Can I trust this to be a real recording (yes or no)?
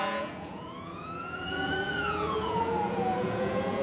no